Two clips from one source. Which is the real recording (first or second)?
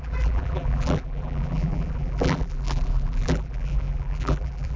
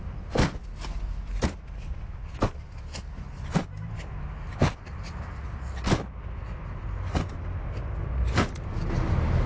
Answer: second